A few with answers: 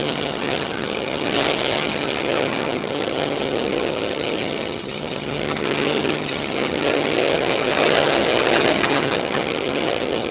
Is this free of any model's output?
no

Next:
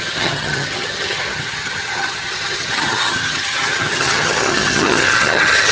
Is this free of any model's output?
no